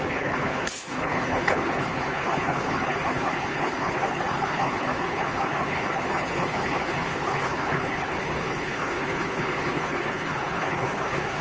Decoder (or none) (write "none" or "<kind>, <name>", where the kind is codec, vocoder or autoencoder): codec, HILCodec